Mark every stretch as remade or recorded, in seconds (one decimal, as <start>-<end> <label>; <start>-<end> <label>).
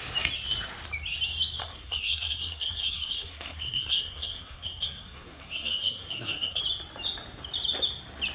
0.0-1.6 recorded; 1.6-6.6 remade; 6.6-8.3 recorded